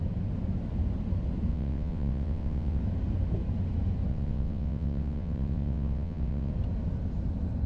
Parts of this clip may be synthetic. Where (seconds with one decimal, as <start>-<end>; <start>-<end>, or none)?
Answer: 1.5-2.8; 4.1-6.5